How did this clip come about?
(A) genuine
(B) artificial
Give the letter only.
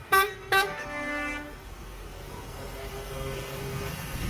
B